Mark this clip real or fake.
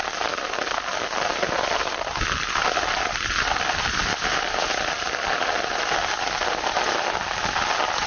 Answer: real